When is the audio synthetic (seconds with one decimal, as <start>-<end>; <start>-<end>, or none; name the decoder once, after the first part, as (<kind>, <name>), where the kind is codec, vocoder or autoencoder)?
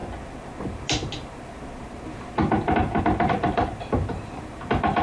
none